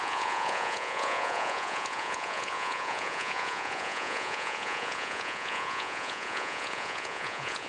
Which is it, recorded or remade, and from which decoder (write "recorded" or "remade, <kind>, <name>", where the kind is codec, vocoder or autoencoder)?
remade, vocoder, Vocos